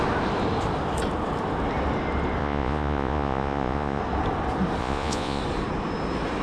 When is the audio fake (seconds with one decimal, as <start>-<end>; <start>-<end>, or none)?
2.4-4.0; 4.8-5.4